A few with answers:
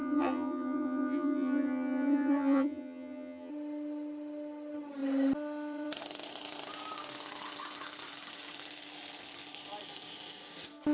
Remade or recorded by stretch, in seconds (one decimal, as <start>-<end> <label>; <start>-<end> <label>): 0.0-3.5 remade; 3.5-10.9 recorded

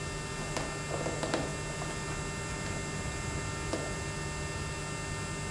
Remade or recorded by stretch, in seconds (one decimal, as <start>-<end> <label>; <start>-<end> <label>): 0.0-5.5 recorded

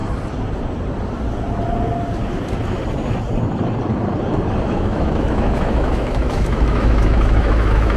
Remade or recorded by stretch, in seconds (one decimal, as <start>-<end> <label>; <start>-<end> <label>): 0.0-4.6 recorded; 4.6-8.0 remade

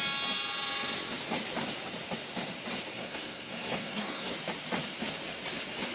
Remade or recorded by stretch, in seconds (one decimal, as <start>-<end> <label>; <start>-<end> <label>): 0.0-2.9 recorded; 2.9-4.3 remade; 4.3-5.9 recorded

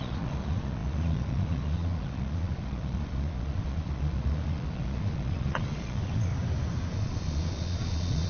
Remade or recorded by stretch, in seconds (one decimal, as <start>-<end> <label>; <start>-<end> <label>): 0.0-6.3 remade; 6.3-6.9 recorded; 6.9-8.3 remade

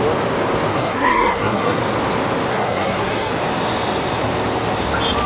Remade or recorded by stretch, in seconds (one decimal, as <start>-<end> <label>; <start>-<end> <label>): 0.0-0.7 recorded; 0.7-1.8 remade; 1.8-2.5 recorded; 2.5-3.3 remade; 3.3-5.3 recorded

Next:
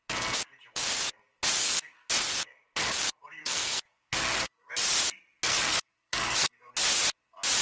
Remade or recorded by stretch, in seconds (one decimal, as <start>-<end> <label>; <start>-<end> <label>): 0.0-1.6 recorded; 1.6-2.1 remade; 2.1-3.4 recorded; 3.4-4.7 remade; 4.7-5.5 recorded; 5.5-6.7 remade; 6.7-7.6 recorded